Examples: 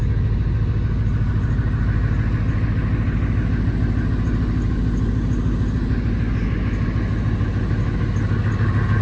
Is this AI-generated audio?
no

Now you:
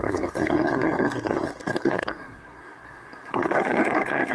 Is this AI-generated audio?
yes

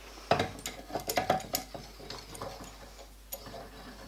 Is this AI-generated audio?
no